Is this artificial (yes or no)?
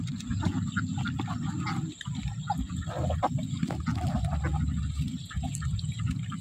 no